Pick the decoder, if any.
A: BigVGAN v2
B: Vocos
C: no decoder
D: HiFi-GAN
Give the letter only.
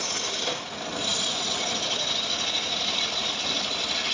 C